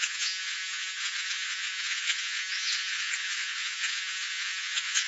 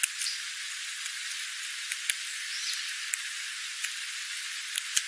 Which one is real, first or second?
second